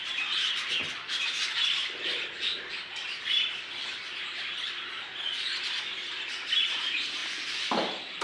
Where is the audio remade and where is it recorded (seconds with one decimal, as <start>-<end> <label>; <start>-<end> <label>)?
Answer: 0.0-8.2 recorded